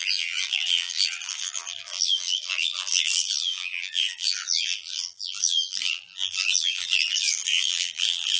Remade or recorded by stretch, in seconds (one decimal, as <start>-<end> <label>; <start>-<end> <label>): 0.0-8.4 remade